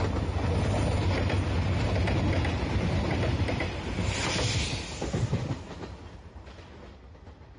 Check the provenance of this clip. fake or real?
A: real